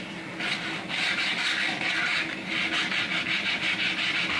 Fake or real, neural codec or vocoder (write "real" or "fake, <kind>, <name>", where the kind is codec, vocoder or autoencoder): real